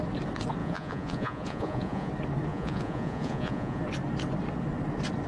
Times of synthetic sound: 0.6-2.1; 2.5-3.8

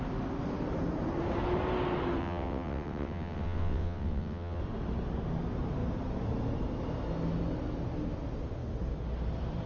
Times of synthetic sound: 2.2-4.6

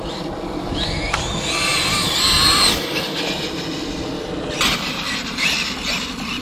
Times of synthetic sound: none